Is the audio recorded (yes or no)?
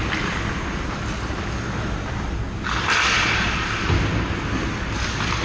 yes